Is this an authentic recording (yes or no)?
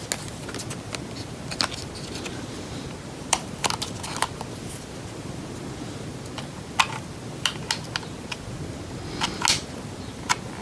yes